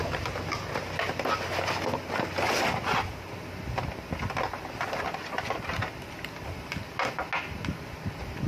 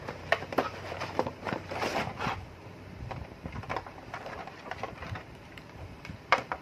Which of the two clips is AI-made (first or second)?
second